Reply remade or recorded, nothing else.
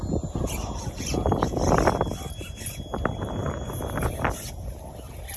recorded